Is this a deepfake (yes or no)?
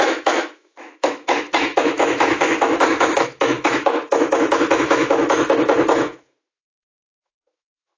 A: yes